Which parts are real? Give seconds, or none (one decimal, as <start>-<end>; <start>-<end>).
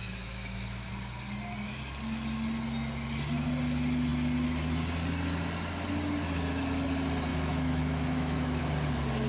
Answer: 0.9-7.3; 8.6-9.3